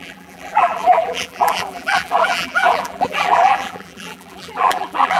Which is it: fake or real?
fake